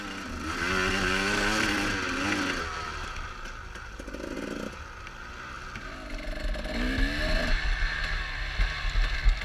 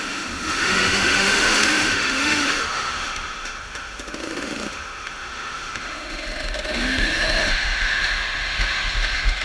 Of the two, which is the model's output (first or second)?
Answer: second